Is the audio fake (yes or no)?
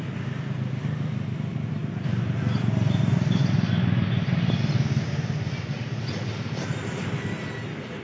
no